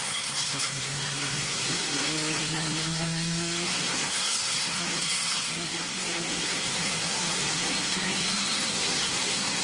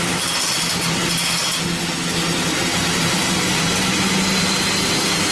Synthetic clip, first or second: first